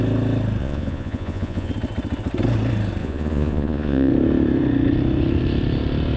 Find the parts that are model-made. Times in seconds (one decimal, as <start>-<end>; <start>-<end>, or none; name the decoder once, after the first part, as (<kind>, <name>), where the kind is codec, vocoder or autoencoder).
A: 0.6-1.7 (vocoder, Vocos); 3.0-4.1